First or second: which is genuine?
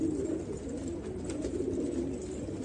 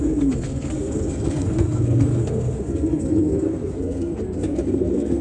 first